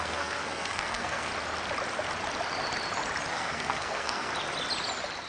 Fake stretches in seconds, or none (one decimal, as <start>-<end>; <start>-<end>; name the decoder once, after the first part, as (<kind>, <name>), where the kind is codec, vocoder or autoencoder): 0.0-1.3 (codec, SNAC); 3.3-4.3